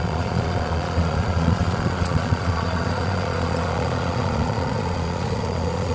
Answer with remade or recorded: remade